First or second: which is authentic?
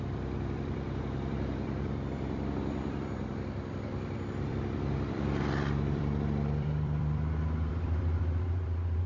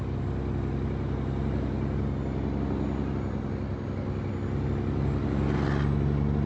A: second